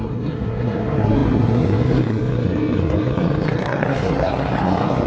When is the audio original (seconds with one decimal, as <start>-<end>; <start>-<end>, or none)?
none